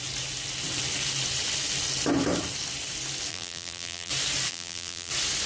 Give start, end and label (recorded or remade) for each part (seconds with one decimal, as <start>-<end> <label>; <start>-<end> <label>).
0.0-3.3 recorded; 3.3-4.1 remade; 4.1-4.5 recorded; 4.5-5.1 remade; 5.1-5.5 recorded